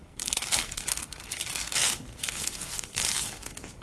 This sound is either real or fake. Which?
fake